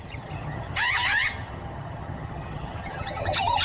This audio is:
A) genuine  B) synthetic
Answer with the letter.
B